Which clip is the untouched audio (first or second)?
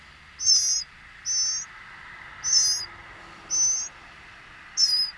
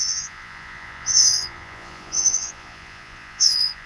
first